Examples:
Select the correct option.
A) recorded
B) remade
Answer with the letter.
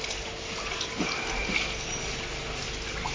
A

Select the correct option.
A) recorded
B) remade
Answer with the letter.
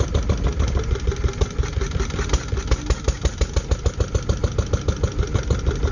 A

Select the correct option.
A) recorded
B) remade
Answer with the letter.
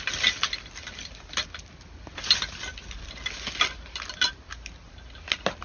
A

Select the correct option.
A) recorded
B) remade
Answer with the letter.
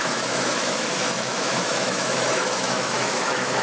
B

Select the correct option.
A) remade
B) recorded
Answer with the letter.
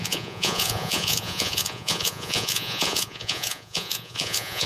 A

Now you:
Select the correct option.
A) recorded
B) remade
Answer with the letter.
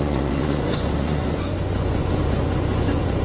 B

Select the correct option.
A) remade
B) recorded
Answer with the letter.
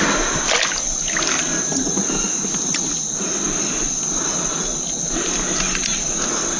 B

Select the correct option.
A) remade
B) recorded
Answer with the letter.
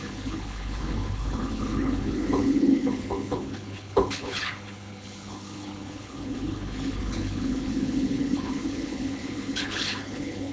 A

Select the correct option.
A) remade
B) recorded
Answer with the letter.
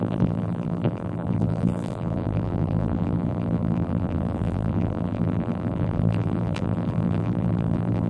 A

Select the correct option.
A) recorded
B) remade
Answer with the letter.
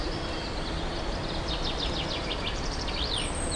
A